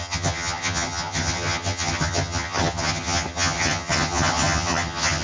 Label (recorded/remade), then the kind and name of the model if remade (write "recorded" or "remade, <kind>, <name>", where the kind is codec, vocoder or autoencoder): remade, vocoder, HiFi-GAN